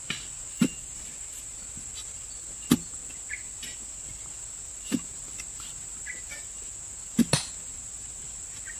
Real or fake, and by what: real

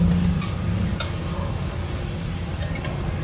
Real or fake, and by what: real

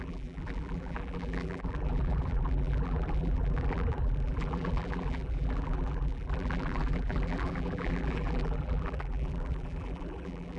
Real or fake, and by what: fake, vocoder, BigVGAN v2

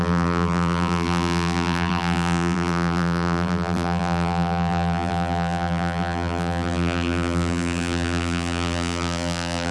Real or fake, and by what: fake, vocoder, BigVGAN v2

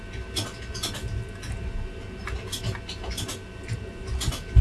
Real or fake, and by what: real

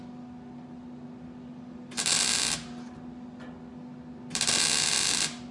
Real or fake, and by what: real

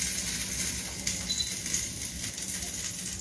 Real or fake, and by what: real